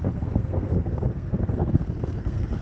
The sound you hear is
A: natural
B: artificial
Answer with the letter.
B